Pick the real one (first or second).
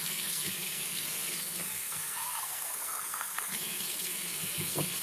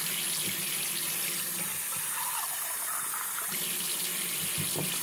second